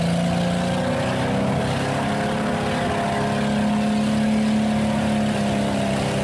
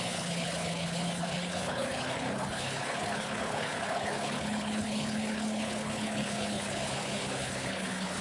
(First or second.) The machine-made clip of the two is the second